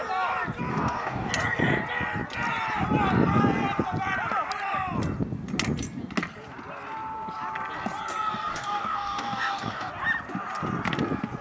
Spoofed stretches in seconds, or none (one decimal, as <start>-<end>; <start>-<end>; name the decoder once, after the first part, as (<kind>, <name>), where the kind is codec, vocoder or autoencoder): 0.7-1.3 (codec, DAC); 8.5-9.9